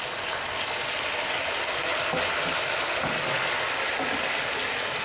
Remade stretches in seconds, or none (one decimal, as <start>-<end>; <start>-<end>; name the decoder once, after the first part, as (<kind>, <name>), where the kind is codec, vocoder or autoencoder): none